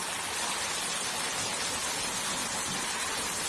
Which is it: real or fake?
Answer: real